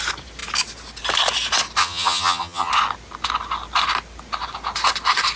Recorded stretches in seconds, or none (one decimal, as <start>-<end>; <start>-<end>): 0.0-1.8; 2.7-5.4